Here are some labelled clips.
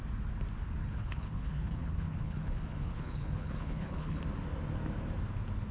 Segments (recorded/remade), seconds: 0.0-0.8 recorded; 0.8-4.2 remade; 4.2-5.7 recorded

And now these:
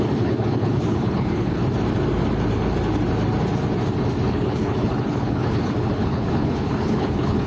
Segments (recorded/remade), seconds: 0.0-1.6 remade; 1.6-4.3 recorded; 4.3-7.5 remade